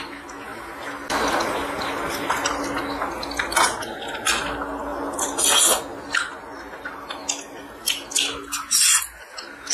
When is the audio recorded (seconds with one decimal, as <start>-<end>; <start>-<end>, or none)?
0.0-9.7